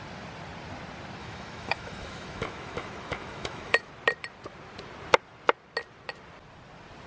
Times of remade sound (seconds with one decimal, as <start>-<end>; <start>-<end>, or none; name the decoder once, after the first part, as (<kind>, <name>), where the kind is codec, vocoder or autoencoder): 1.2-3.9 (autoencoder, DAC-VAE)